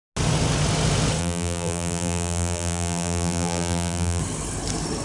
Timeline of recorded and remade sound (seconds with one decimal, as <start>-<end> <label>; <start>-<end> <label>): 0.0-1.2 recorded; 1.2-4.2 remade; 4.2-5.0 recorded